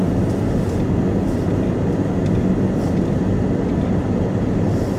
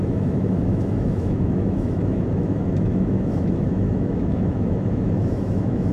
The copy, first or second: second